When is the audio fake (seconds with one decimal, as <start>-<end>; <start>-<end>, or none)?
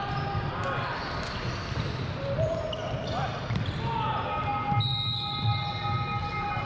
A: none